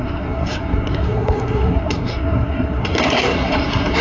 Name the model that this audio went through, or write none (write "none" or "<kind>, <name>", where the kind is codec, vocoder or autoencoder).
codec, SNAC